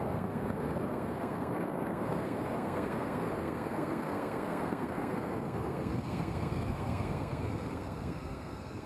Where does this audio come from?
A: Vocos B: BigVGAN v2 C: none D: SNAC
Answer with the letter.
D